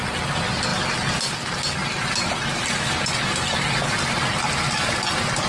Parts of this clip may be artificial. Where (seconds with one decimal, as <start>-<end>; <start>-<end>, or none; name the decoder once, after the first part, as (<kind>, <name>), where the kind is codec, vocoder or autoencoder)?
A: none